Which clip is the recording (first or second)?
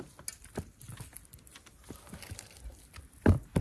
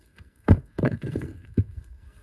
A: first